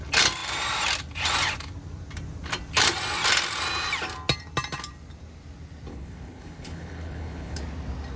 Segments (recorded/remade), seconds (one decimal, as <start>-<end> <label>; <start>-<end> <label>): 0.0-5.9 recorded; 5.9-7.6 remade; 7.6-8.2 recorded